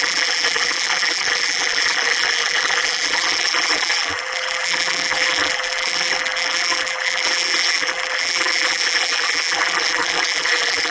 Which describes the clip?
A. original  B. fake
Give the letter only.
B